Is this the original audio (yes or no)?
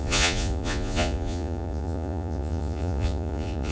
no